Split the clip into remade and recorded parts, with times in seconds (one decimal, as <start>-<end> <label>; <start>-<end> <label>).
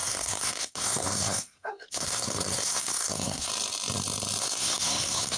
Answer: 0.0-3.5 remade; 3.5-4.4 recorded; 4.4-5.4 remade